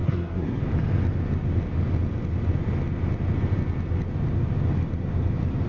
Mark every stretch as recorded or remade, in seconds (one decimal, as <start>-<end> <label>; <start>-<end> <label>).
0.0-0.6 remade; 0.6-5.7 recorded